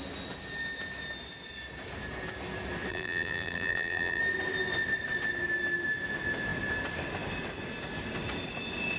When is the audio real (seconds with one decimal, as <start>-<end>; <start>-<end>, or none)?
0.0-2.9; 4.2-9.0